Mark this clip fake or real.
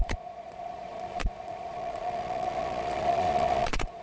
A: fake